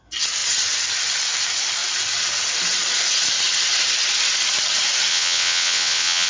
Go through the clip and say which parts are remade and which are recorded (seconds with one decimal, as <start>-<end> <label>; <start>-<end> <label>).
0.0-5.1 recorded; 5.1-6.3 remade